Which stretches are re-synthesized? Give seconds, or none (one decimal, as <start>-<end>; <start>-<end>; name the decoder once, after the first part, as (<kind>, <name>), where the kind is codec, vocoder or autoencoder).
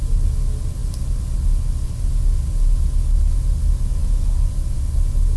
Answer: none